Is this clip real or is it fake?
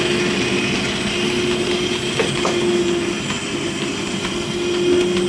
real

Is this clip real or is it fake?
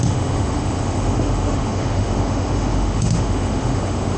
fake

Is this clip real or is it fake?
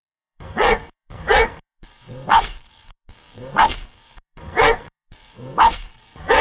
fake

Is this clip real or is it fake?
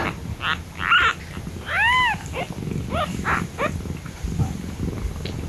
real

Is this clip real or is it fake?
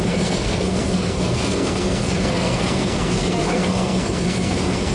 fake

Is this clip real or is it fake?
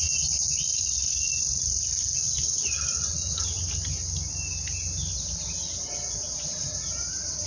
real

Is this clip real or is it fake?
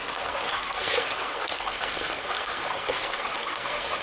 fake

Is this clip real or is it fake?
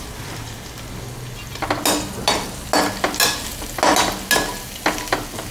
real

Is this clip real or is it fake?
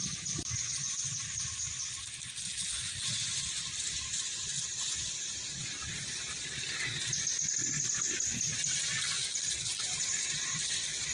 real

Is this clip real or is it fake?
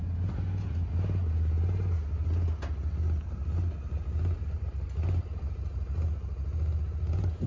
real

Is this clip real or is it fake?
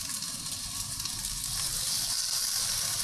real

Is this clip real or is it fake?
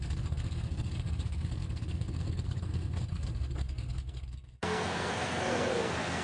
fake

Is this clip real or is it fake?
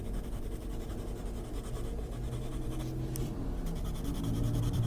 fake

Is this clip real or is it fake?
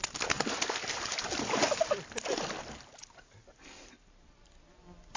real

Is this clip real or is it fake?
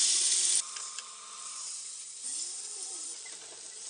real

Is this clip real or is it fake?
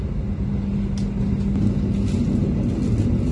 real